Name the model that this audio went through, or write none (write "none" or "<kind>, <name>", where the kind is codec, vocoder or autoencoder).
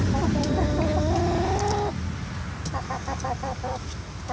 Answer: none